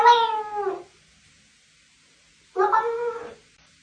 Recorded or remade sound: recorded